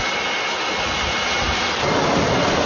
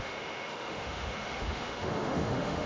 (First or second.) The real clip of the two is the first